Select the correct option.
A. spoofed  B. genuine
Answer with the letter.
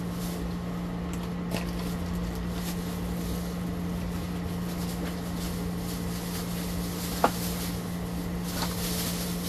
B